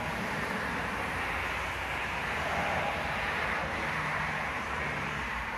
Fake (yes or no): yes